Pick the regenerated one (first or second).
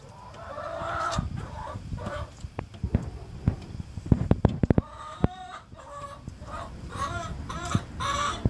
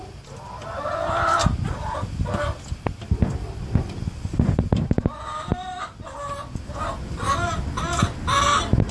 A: first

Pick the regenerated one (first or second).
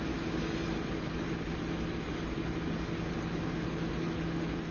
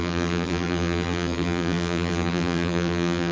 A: second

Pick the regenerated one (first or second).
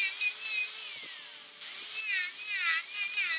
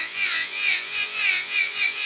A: second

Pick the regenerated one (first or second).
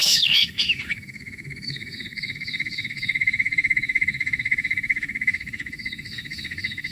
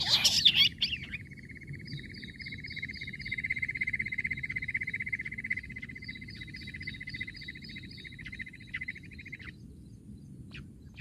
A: first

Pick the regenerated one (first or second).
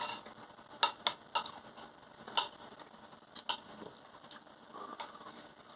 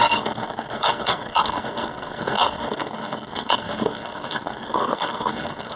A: second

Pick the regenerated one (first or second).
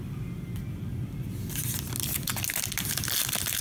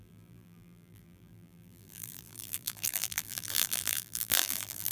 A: second